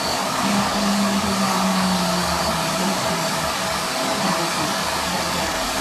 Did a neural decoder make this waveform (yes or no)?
yes